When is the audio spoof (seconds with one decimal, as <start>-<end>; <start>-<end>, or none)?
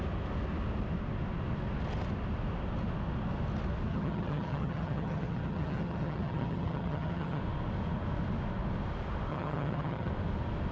3.9-7.4; 9.3-10.1